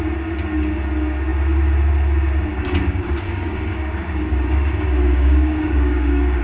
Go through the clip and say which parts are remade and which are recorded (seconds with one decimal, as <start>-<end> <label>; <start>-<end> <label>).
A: 0.0-2.5 recorded; 2.5-6.4 remade